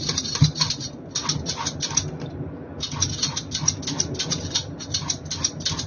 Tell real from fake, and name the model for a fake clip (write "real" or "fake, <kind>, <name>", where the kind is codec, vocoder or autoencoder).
real